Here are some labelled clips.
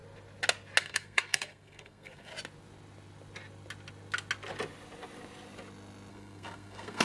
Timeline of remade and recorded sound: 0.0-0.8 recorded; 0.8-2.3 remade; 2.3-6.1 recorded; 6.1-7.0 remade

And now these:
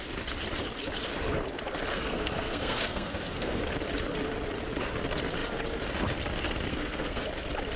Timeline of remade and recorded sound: 0.0-1.9 recorded; 1.9-3.6 remade; 3.6-6.7 recorded; 6.7-7.2 remade; 7.2-7.8 recorded

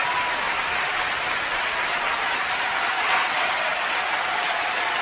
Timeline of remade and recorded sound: 0.0-5.0 recorded

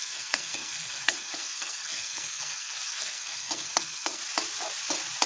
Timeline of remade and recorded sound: 0.0-4.2 remade; 4.2-5.3 recorded

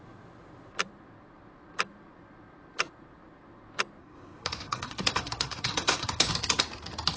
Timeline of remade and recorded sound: 0.0-4.0 recorded; 4.0-6.3 remade; 6.3-7.2 recorded